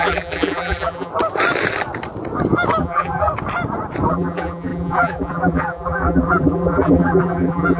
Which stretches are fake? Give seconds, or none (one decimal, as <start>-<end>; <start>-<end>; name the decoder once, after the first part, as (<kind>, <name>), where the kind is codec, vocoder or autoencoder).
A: 0.0-1.1 (vocoder, BigVGAN v2); 2.8-3.3; 4.1-7.8